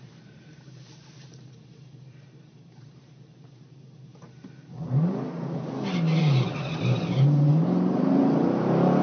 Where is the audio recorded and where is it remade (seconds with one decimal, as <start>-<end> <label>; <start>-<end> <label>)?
0.0-4.1 remade; 4.1-6.2 recorded; 6.2-9.0 remade